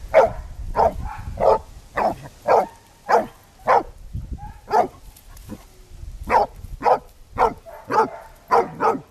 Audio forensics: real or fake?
real